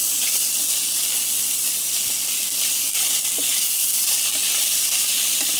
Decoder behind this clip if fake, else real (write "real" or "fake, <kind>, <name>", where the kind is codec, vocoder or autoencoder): real